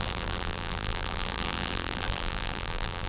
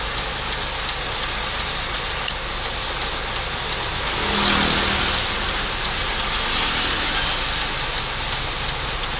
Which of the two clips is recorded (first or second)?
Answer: second